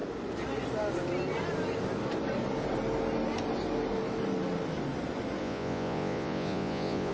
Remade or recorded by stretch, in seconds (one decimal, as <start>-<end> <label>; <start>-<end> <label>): 0.0-5.4 recorded; 5.4-7.1 remade